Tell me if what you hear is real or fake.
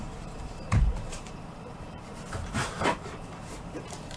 fake